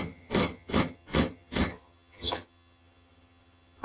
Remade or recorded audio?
remade